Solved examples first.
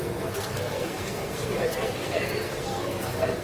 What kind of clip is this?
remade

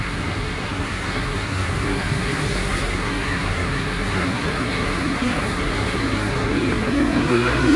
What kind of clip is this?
remade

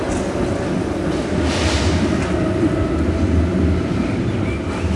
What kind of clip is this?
recorded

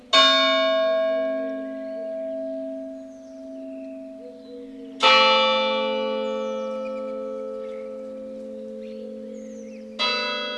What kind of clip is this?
recorded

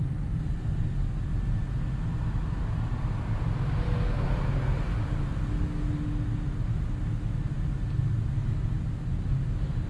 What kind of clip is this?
recorded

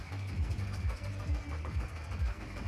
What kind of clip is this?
remade